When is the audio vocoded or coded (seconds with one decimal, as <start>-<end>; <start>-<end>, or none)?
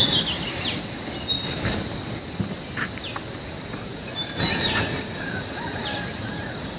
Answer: 3.6-4.1; 4.6-5.8; 6.3-6.8